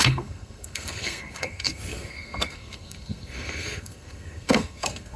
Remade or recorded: remade